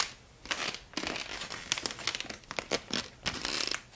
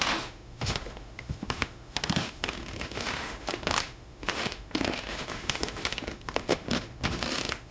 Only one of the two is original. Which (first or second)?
first